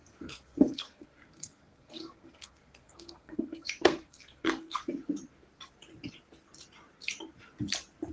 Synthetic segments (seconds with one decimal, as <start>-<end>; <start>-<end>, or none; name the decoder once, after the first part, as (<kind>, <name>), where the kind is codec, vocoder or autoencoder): 0.0-4.9 (codec, SNAC)